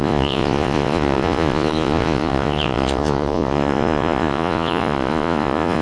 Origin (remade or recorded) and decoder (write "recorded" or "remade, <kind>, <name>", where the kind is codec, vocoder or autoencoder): remade, vocoder, Vocos